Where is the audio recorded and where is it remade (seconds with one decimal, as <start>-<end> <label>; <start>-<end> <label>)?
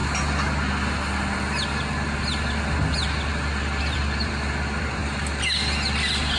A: 0.0-3.8 recorded; 3.8-5.0 remade; 5.0-6.4 recorded